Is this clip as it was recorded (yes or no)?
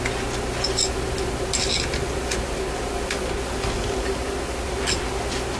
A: yes